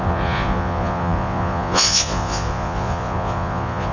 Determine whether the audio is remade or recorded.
remade